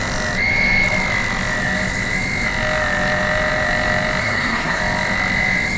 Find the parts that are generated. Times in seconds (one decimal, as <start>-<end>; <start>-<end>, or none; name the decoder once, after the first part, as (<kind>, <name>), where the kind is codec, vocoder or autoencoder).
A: 4.2-4.8 (codec, SNAC)